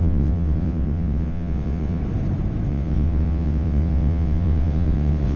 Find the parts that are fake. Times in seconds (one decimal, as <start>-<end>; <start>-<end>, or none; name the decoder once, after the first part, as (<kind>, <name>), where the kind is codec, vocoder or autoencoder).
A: 0.0-2.0 (vocoder, WaveNeXt); 2.7-5.4